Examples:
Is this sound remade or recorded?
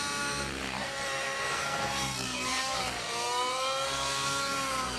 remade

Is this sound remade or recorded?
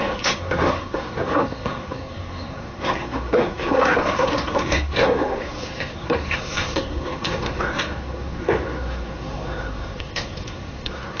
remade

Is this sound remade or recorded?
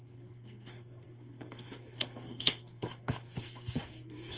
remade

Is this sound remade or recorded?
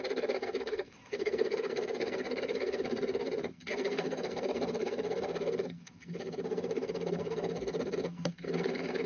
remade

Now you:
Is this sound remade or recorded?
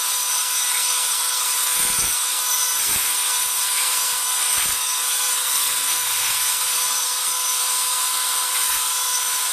remade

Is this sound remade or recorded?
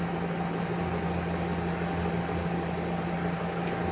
recorded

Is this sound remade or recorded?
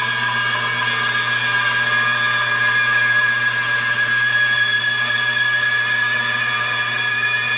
recorded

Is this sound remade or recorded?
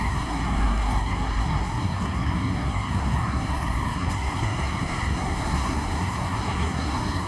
remade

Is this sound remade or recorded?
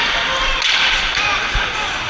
recorded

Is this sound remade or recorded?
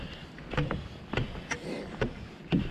recorded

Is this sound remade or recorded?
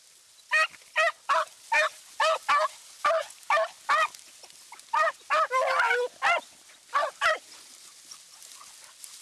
recorded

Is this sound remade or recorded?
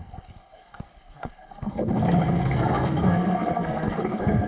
remade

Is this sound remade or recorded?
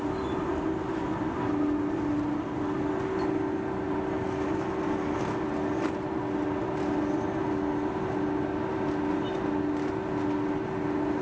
recorded